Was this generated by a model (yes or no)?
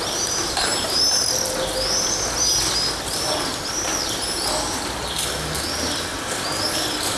no